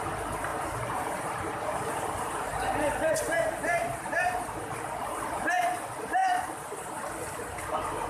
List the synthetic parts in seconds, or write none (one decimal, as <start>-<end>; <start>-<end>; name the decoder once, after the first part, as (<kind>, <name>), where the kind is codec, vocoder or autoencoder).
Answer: 0.5-2.1 (vocoder, BigVGAN v2); 2.5-4.7